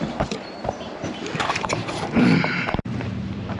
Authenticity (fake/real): fake